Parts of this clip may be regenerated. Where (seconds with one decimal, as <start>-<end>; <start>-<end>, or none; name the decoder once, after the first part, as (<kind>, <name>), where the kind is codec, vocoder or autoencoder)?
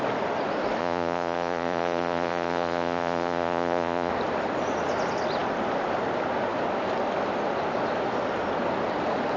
0.8-4.1 (vocoder, Vocos)